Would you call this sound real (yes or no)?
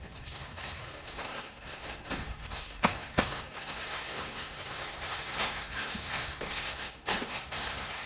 no